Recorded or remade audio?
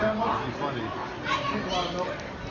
recorded